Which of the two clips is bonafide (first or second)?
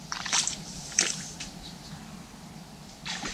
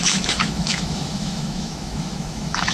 first